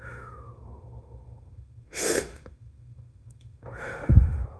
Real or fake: fake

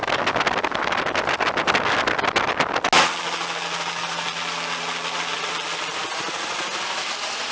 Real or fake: real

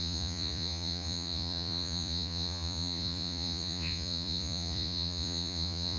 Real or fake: fake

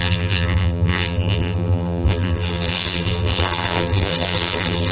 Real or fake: fake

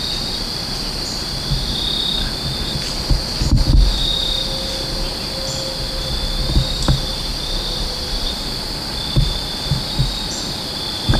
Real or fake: real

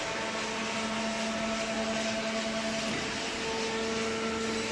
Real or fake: real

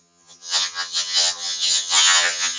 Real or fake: fake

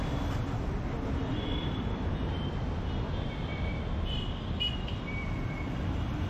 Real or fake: real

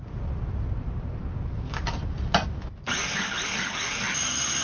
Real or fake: real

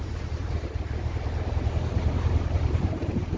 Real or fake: fake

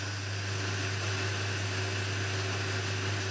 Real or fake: real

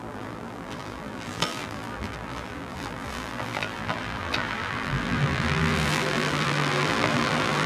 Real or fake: fake